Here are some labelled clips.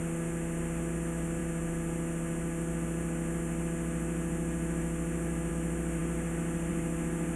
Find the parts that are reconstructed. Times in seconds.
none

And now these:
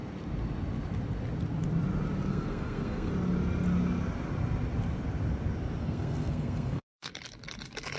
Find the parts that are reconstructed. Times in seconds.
2.3-3.1 (codec, SNAC); 5.8-7.1

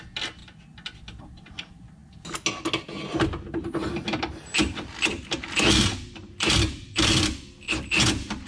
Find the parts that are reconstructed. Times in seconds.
none

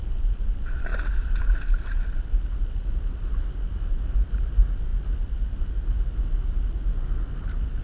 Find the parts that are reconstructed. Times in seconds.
none

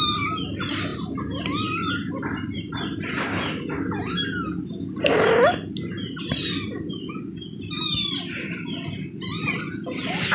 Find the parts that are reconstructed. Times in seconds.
none

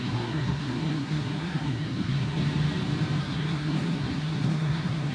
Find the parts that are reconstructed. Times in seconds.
0.0-2.4 (codec, SNAC); 3.2-5.1

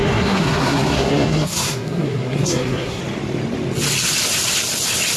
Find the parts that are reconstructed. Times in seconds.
0.0-3.0 (codec, SNAC)